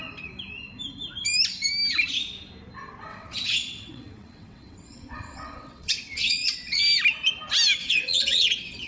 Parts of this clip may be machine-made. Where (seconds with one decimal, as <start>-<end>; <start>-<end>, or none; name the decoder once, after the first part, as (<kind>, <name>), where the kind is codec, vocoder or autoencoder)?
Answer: 3.1-6.8 (vocoder, WaveNeXt); 7.8-8.9